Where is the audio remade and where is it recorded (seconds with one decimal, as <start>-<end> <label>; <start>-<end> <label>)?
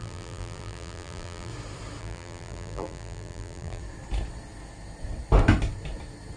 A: 0.0-1.5 remade; 1.5-2.0 recorded; 2.0-3.8 remade; 3.8-6.4 recorded